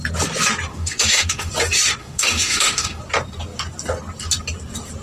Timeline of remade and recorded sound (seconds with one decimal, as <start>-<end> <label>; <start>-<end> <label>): 0.0-0.7 recorded; 0.7-1.5 remade; 1.5-2.0 recorded; 2.0-3.0 remade; 3.0-5.0 recorded